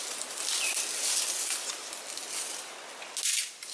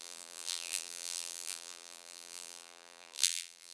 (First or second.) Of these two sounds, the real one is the first